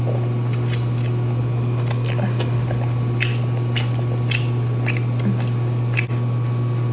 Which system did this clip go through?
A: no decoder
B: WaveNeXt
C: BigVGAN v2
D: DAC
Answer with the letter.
A